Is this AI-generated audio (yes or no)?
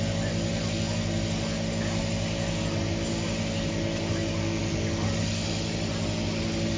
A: no